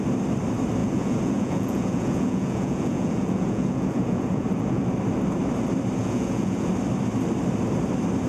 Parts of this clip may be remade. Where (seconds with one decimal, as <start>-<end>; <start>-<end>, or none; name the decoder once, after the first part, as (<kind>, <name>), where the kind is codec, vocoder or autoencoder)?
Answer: 0.8-4.8 (vocoder, Vocos); 6.0-6.7